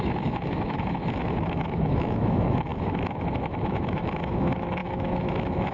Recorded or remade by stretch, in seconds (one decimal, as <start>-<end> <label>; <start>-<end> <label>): 0.0-5.7 remade

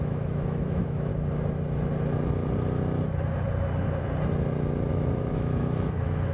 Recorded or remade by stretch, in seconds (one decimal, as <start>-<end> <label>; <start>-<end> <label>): 0.0-1.1 remade; 1.1-4.9 recorded; 4.9-6.3 remade